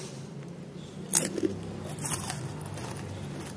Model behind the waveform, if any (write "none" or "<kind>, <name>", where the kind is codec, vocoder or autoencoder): none